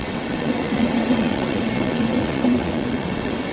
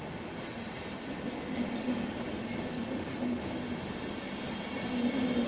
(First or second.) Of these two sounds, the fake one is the first